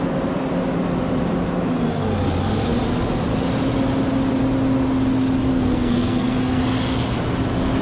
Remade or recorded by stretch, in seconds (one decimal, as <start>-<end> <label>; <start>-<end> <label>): 0.0-5.5 recorded; 5.5-6.6 remade; 6.6-7.8 recorded